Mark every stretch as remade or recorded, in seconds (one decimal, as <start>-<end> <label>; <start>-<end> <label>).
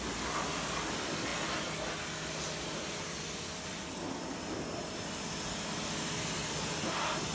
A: 0.0-7.3 recorded